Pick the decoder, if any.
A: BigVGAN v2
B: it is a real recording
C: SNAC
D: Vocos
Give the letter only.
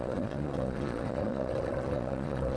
D